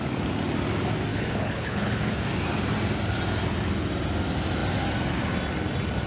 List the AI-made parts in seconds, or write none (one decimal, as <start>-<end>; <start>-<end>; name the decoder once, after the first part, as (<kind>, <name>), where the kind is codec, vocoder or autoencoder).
1.1-2.1 (codec, HILCodec)